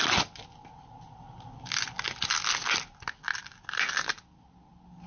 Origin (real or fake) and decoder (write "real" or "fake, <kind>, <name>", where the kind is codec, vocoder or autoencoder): real